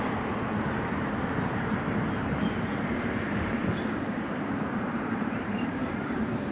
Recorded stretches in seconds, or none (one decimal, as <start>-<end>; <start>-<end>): none